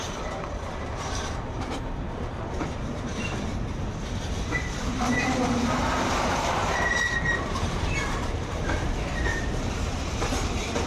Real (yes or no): no